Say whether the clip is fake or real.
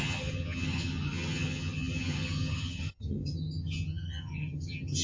fake